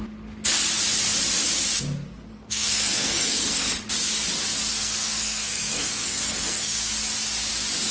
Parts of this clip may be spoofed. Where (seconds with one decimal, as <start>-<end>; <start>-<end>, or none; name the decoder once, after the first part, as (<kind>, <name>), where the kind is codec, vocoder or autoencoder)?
2.3-3.8 (codec, SNAC); 4.7-6.9